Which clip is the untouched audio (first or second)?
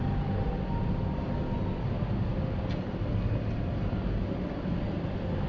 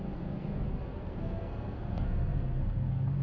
first